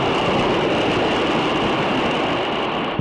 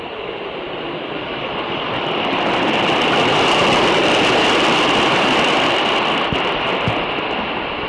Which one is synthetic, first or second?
second